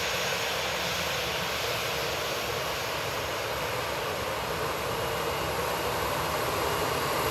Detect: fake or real real